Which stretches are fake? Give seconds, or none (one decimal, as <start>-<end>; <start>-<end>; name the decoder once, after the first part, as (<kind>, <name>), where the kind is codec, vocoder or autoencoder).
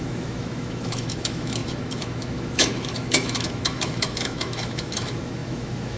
0.0-6.0 (autoencoder, DAC-VAE)